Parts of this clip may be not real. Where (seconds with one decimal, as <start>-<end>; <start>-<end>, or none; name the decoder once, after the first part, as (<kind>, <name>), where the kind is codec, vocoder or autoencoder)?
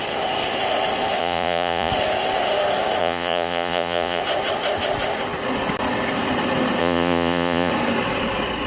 1.2-1.9 (vocoder, Vocos); 3.0-4.2; 6.8-7.7